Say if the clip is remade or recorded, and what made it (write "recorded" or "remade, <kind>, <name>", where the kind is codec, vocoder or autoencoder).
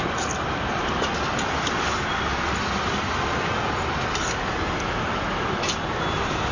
recorded